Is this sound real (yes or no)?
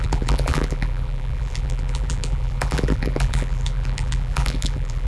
no